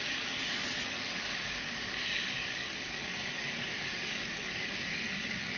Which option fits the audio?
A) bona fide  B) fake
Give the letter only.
B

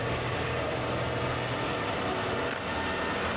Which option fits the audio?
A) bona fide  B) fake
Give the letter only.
A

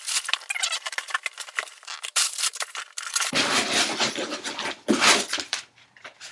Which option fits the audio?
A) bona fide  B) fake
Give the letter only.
B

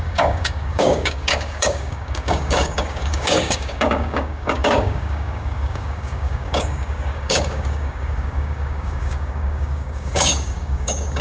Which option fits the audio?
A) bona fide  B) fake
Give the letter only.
B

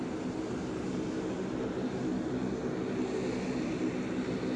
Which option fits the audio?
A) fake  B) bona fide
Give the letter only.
B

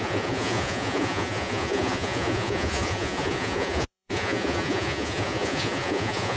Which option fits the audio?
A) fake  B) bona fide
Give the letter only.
A